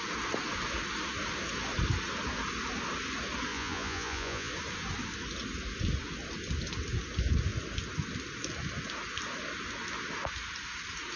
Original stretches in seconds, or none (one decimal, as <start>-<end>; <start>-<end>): 0.0-3.5; 4.5-11.2